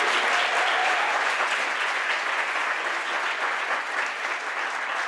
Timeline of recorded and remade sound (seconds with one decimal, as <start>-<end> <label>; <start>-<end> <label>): 0.0-0.8 recorded; 0.8-3.8 remade; 3.8-5.1 recorded